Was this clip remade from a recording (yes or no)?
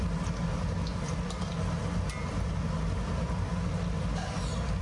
no